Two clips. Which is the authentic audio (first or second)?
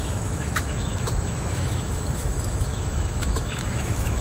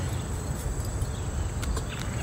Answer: second